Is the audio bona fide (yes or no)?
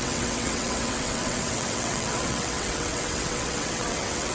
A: no